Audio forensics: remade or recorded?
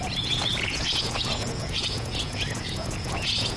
remade